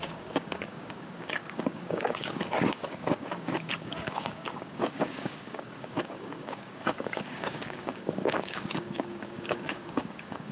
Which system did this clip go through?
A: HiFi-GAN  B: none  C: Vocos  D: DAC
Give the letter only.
D